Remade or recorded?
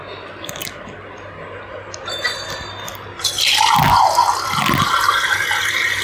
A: recorded